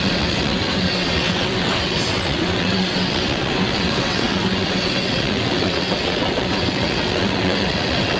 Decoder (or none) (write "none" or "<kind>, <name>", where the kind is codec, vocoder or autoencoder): vocoder, WaveNeXt